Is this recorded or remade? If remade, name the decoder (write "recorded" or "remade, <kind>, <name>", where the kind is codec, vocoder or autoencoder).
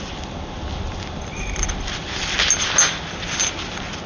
recorded